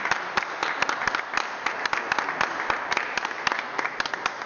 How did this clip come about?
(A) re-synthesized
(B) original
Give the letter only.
B